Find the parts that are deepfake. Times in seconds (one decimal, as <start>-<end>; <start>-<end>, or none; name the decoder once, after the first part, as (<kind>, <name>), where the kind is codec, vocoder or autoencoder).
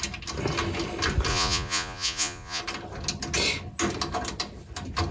1.3-2.6 (vocoder, Vocos)